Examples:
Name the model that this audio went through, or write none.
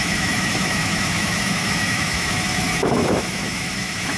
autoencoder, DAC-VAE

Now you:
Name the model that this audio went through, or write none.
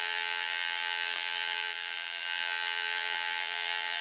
vocoder, BigVGAN v2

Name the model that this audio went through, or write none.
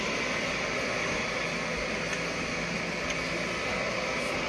none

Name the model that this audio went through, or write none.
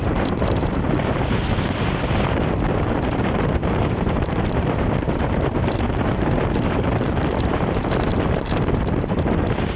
vocoder, BigVGAN v2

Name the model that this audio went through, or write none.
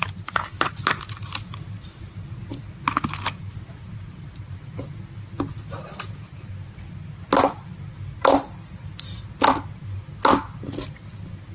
none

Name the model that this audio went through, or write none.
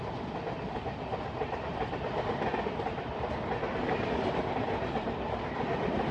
none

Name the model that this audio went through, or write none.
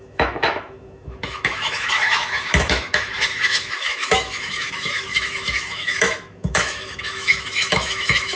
autoencoder, DAC-VAE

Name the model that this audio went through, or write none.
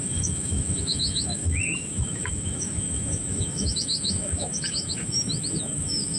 autoencoder, DAC-VAE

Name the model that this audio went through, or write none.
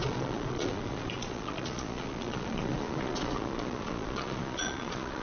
vocoder, Vocos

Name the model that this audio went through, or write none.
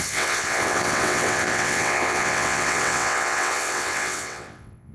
vocoder, WaveNeXt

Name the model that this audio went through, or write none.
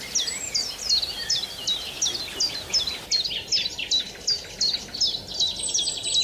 none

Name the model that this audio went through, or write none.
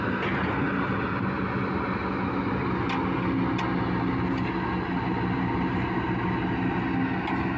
none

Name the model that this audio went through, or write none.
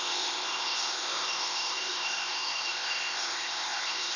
codec, ZipCodec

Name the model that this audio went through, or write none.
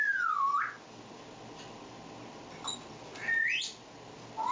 none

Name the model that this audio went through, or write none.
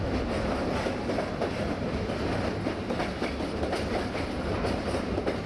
none